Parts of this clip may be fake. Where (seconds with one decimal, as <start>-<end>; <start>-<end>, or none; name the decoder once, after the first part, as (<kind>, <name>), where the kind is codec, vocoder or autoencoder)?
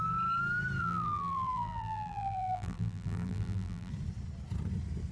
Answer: 0.8-3.9 (vocoder, BigVGAN v2)